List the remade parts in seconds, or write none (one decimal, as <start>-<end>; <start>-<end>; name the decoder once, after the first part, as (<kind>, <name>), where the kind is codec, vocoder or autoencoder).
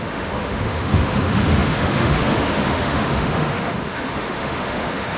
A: 0.0-5.2 (autoencoder, DAC-VAE)